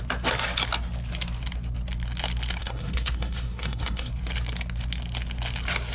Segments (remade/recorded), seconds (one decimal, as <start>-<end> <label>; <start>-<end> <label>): 0.0-2.6 recorded; 2.6-4.1 remade; 4.1-5.9 recorded